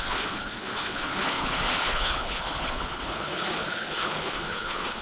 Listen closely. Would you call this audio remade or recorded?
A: remade